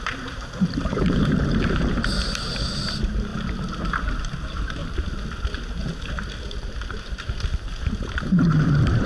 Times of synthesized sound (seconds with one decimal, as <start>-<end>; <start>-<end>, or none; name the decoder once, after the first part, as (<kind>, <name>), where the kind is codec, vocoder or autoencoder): 0.0-3.3 (vocoder, BigVGAN v2); 4.1-4.8; 6.3-9.1